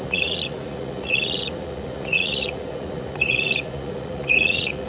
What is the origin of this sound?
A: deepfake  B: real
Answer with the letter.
A